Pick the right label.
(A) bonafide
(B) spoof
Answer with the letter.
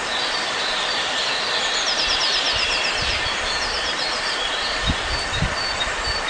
B